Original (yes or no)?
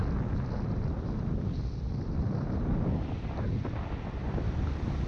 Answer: yes